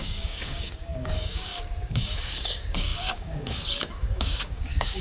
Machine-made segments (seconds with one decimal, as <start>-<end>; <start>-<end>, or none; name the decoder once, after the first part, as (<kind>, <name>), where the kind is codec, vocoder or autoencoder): 0.0-5.0 (codec, DAC)